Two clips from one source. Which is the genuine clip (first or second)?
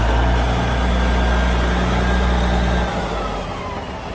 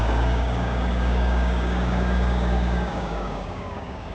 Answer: first